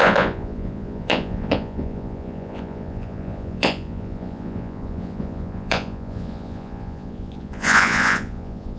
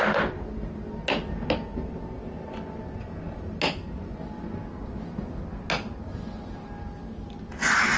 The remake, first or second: first